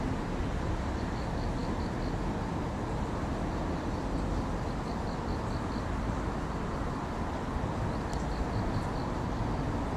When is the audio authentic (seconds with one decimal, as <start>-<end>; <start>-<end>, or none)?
0.0-10.0

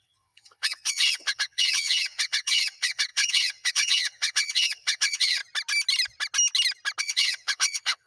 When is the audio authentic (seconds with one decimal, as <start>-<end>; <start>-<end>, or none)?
5.4-7.0

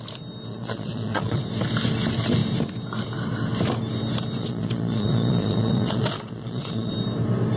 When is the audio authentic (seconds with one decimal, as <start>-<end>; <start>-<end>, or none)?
0.0-0.5; 1.4-4.4; 6.9-7.6

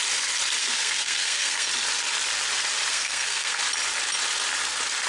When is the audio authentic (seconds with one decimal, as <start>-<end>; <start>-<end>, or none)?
0.0-0.6; 1.7-2.9; 3.6-5.1

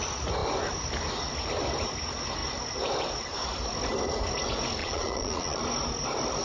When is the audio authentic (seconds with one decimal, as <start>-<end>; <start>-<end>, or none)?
0.0-4.8; 5.6-6.4

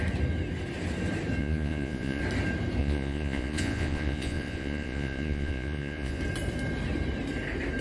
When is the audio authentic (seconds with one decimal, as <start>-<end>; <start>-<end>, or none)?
0.0-1.4; 2.2-2.8; 6.2-7.8

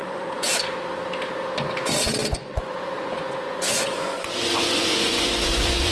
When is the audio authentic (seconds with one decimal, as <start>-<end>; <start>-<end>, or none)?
0.5-2.2